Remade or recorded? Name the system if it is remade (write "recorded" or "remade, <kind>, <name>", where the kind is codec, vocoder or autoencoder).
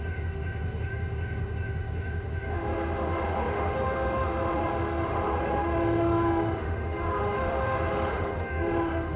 remade, autoencoder, DAC-VAE